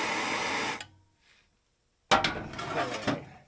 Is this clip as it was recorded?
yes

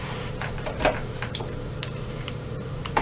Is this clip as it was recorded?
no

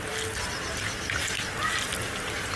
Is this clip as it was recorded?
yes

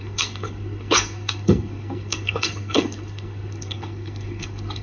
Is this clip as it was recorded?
no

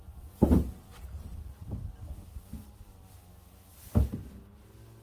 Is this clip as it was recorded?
yes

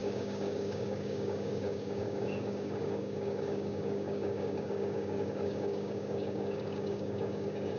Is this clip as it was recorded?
no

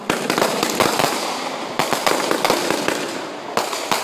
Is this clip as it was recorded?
yes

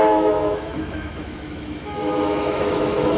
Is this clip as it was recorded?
no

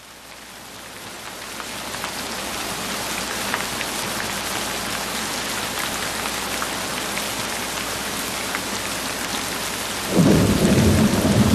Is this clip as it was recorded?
yes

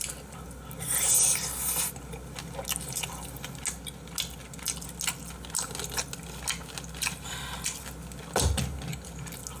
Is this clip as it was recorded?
yes